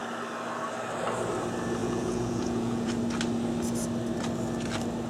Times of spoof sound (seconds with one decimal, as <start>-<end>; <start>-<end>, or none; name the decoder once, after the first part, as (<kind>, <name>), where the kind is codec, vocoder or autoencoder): 1.8-2.9 (vocoder, Vocos)